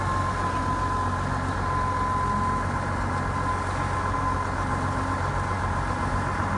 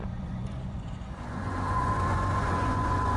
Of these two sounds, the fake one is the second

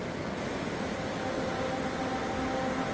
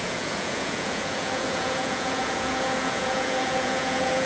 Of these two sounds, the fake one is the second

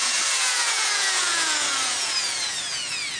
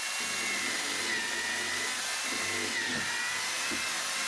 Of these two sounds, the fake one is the first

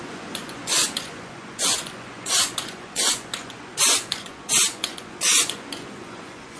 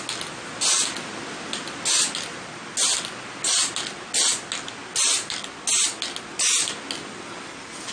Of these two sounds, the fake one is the first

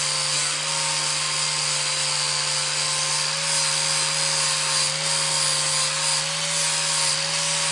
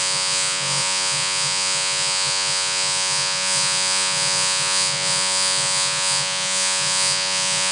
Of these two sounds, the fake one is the second